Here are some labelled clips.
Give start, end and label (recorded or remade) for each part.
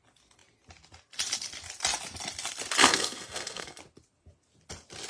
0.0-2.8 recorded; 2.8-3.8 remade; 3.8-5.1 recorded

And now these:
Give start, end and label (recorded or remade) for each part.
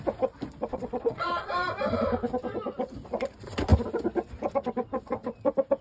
0.0-0.7 recorded; 0.7-1.5 remade; 1.5-5.8 recorded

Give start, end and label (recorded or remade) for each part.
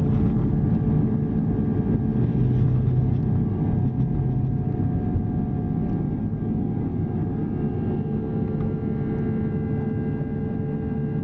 0.0-2.3 recorded; 2.3-3.2 remade; 3.2-6.2 recorded; 6.2-7.4 remade; 7.4-11.2 recorded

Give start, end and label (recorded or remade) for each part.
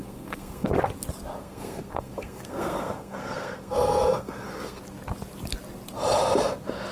0.0-0.8 remade; 0.8-1.4 recorded; 1.4-4.8 remade; 4.8-6.9 recorded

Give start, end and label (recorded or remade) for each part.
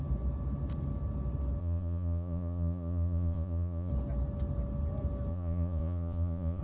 0.0-1.6 recorded; 1.6-3.9 remade; 3.9-5.3 recorded; 5.3-6.6 remade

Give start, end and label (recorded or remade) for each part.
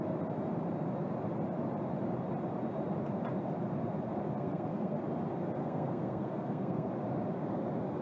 0.0-4.4 recorded; 4.4-5.0 remade; 5.0-5.6 recorded; 5.6-6.9 remade; 6.9-8.0 recorded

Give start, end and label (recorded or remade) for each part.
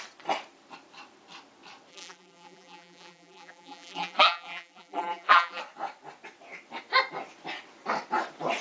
0.0-1.9 recorded; 1.9-5.6 remade; 5.6-8.6 recorded